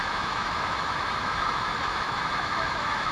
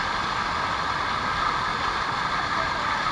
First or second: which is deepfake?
first